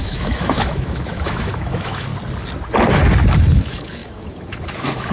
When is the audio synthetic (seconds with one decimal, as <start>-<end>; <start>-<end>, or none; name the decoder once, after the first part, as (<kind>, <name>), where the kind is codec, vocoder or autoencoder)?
0.0-2.1 (autoencoder, DAC-VAE); 3.5-5.1